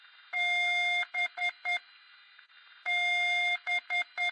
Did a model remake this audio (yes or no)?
no